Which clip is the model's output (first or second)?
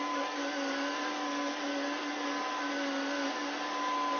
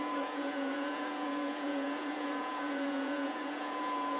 second